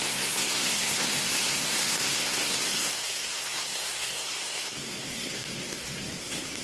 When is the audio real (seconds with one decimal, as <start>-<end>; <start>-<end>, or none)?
none